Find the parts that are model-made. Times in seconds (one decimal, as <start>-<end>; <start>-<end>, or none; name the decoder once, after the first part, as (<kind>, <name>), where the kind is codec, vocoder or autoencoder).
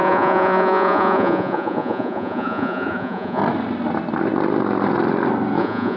0.0-3.4 (vocoder, Vocos); 5.6-6.0